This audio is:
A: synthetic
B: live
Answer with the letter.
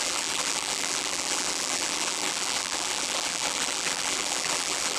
A